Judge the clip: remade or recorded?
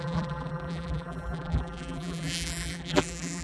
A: remade